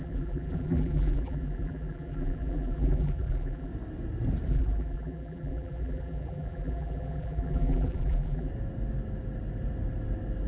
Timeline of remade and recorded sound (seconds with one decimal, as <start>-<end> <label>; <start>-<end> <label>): 0.0-3.7 remade; 3.7-4.5 recorded; 4.5-8.5 remade; 8.5-10.5 recorded